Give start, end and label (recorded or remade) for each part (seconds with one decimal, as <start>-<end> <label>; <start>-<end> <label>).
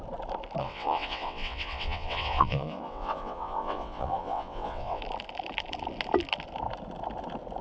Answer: 0.0-0.6 recorded; 0.6-5.0 remade; 5.0-7.6 recorded